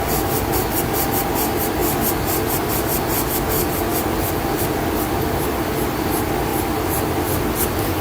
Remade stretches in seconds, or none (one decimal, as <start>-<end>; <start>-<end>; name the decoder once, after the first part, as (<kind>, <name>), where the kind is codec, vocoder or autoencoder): none